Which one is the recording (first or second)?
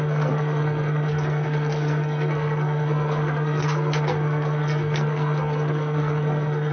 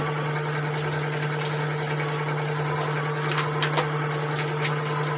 second